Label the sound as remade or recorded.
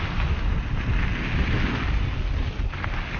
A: recorded